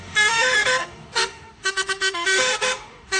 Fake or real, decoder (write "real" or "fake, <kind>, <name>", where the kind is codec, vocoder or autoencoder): fake, autoencoder, DAC-VAE